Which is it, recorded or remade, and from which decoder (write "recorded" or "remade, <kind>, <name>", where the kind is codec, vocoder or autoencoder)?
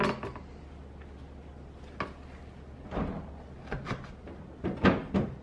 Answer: recorded